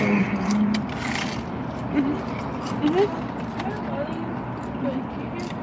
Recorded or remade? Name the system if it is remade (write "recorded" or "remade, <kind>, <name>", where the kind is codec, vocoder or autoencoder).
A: recorded